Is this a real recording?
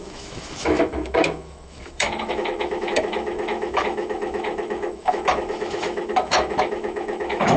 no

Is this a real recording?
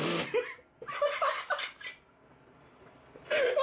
yes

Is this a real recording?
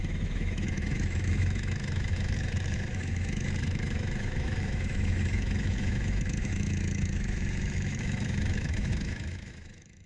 no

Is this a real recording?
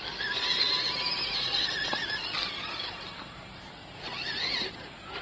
yes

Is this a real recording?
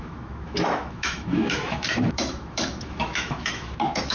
no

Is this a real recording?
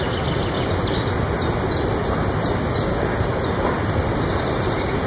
yes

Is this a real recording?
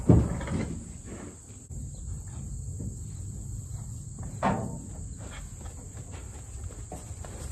yes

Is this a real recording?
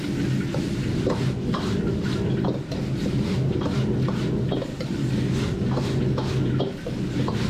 yes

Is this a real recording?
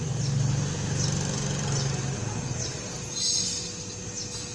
yes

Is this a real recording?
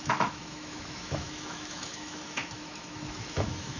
no